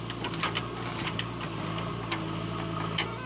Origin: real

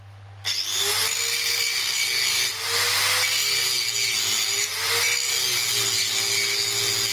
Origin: real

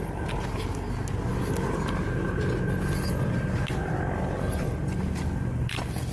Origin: real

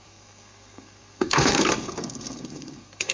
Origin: fake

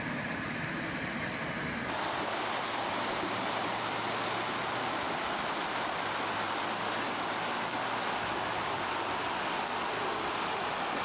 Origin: real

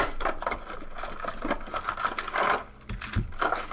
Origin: real